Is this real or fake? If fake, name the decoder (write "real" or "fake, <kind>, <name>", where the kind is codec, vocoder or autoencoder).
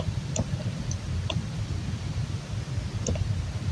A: real